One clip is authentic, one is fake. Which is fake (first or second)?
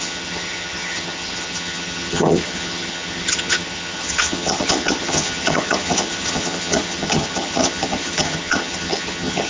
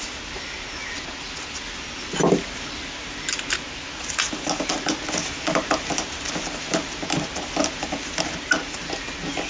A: first